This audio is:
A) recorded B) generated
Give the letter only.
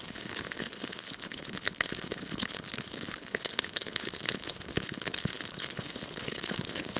B